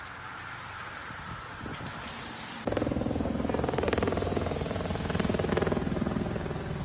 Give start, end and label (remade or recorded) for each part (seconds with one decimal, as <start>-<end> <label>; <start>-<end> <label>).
0.0-6.8 recorded